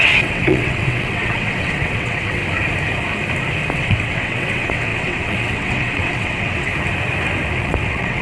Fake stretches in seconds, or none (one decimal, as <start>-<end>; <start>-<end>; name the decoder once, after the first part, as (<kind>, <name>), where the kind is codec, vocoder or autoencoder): 0.0-2.4 (vocoder, WaveNeXt); 3.7-6.7; 7.6-8.2